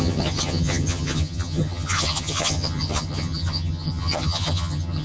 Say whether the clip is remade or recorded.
remade